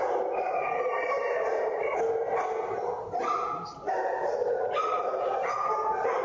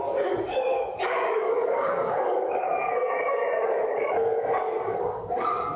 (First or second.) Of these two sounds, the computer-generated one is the second